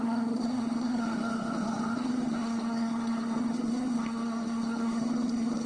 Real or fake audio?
fake